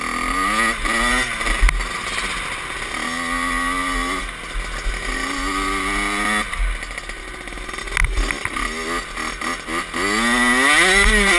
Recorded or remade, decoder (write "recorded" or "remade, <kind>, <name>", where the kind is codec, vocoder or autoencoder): recorded